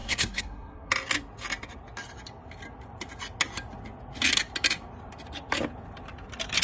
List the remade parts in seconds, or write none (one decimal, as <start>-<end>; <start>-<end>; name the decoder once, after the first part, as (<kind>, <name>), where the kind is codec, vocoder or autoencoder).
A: 0.0-0.9 (codec, SNAC)